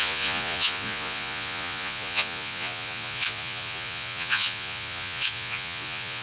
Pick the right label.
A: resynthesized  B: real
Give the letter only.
A